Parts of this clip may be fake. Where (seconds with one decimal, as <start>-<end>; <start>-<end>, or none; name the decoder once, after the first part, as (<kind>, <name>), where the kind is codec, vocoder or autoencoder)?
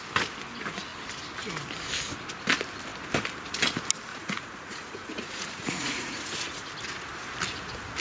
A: 4.1-6.7 (vocoder, Vocos)